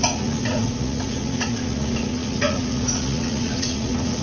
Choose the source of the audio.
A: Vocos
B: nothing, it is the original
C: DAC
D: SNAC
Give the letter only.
A